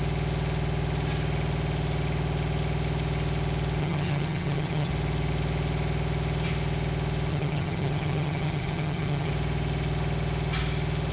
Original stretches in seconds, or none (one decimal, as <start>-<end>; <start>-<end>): 0.0-3.8; 4.9-7.3; 9.3-11.1